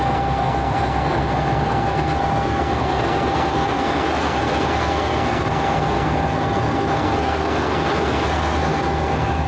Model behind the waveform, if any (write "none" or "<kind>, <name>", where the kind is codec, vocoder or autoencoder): codec, SNAC